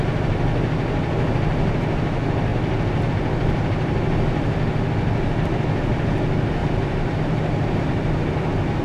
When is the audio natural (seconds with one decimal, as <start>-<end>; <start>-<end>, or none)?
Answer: 0.0-6.6; 7.8-8.8